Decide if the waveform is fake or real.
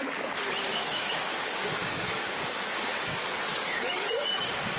fake